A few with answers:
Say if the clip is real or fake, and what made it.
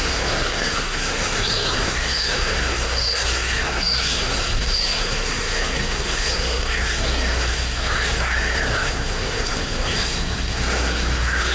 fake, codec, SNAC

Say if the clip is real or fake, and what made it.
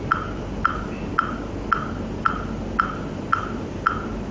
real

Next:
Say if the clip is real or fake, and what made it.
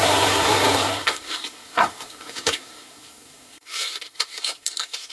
fake, codec, SNAC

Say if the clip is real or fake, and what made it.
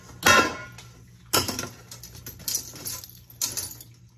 real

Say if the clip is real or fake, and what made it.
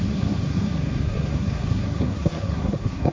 fake, codec, SNAC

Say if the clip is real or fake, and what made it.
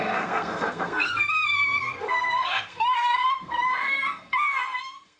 fake, codec, SNAC